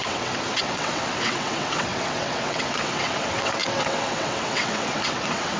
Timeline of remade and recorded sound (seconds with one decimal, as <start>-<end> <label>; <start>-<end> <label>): 0.0-5.6 remade